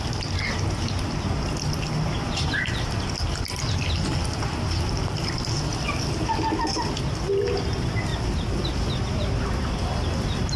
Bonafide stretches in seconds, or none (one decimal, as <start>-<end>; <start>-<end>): 0.0-10.6